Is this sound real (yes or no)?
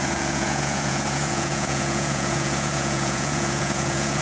no